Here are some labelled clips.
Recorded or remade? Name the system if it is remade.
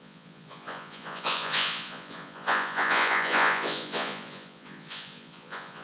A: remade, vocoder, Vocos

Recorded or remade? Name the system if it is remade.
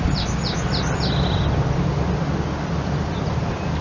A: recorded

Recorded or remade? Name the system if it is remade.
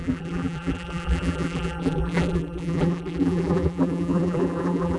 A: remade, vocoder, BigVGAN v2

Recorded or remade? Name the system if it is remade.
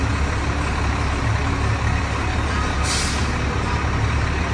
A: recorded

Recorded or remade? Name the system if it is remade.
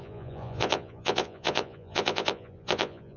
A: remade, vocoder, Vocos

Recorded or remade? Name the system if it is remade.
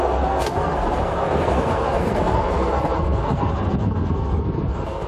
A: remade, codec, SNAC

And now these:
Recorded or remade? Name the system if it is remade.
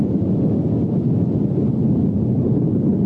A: recorded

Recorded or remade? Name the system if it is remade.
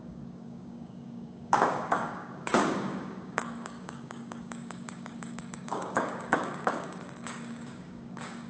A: remade, codec, DAC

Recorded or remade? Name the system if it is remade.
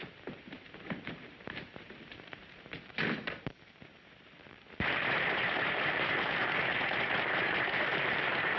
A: remade, vocoder, BigVGAN v2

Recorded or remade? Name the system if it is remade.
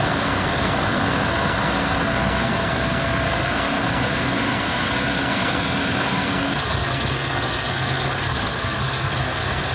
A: remade, codec, SNAC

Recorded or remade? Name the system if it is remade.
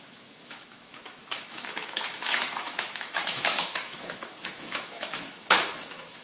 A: remade, autoencoder, DAC-VAE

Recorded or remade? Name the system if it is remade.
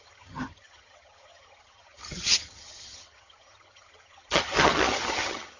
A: remade, vocoder, HiFi-GAN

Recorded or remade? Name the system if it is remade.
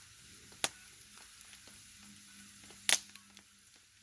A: recorded